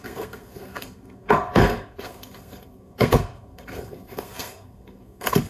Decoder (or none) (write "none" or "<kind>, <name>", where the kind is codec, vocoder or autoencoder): codec, SNAC